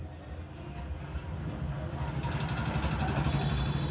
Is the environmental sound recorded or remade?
recorded